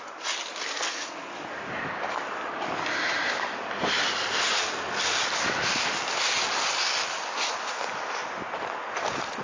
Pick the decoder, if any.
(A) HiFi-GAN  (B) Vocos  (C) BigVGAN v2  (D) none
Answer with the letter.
D